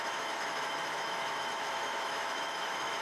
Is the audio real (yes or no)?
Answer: no